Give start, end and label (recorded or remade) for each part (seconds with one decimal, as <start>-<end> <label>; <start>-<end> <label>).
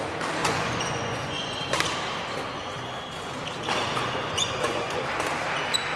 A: 0.0-0.4 recorded; 0.4-1.6 remade; 1.6-2.5 recorded; 2.5-3.3 remade; 3.3-3.8 recorded; 3.8-5.0 remade; 5.0-6.0 recorded